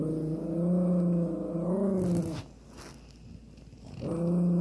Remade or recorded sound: recorded